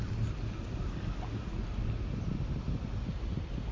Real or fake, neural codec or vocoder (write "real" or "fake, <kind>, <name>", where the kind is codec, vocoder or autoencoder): real